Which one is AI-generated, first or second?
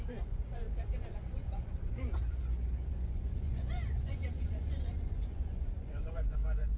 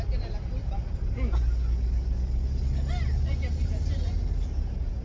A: first